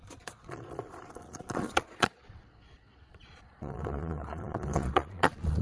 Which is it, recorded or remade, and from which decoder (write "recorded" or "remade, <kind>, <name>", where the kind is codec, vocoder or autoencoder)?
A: remade, vocoder, Vocos